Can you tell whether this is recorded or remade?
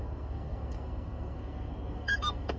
remade